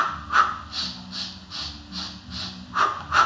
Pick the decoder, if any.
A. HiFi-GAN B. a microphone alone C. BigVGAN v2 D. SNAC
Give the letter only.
B